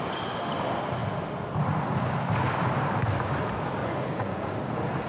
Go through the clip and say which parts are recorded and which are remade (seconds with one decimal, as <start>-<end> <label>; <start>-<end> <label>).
0.0-3.8 recorded; 3.8-4.4 remade; 4.4-5.1 recorded